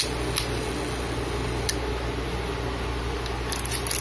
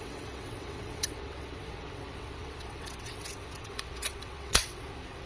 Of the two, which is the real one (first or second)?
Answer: first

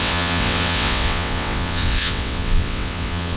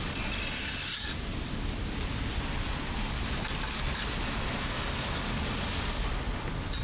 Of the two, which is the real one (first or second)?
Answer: second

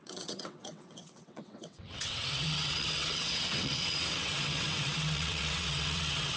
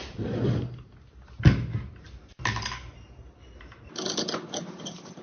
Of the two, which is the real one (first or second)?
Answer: second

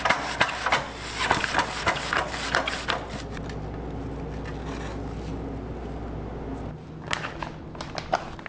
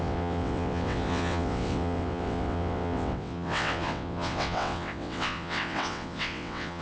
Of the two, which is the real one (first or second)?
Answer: first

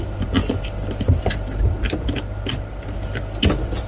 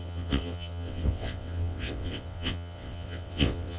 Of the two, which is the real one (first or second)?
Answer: first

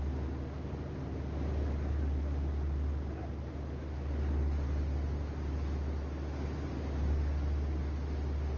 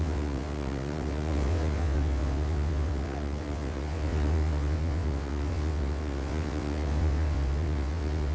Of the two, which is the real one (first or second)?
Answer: first